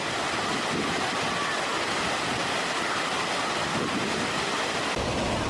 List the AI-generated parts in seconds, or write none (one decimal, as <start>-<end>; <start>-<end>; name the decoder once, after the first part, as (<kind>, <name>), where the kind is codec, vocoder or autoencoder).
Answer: none